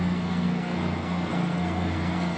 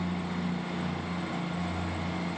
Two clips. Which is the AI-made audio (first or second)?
first